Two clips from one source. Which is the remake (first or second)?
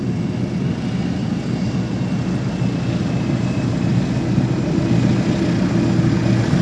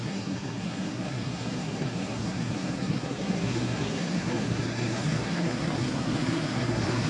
second